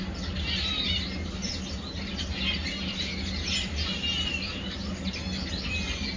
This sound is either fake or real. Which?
real